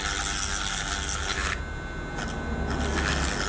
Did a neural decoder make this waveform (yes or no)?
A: no